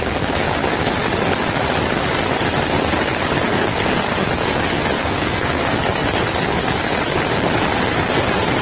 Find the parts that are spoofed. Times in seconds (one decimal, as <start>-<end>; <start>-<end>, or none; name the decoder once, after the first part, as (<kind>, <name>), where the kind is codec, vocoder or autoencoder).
3.5-4.3 (codec, SNAC); 5.0-5.6